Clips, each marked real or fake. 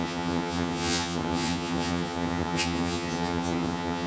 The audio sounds fake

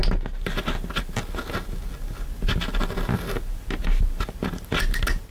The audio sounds real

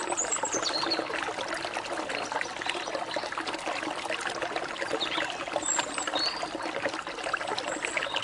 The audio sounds real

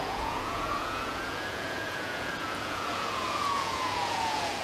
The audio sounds fake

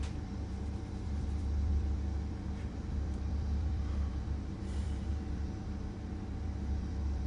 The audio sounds fake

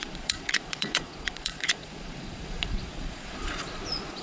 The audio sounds fake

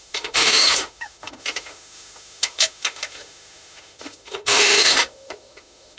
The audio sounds fake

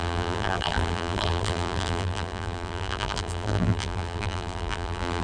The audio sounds fake